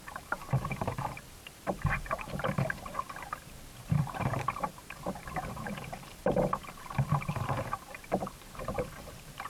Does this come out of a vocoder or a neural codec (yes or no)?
yes